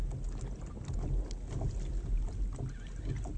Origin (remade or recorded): recorded